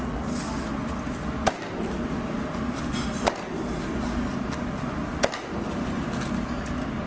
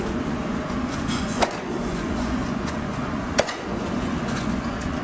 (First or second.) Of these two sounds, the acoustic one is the first